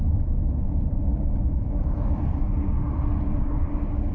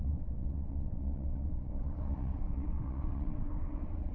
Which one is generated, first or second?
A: second